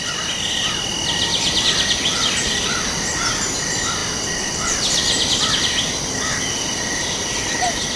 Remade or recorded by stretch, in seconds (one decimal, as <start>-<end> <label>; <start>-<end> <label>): 0.0-8.0 recorded